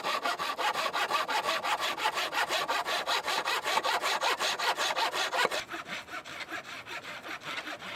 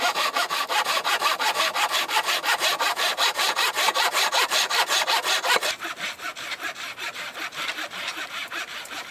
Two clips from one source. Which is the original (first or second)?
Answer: first